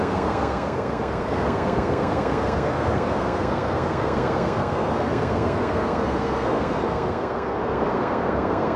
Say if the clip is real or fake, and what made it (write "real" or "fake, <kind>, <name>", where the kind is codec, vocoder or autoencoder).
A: fake, codec, SNAC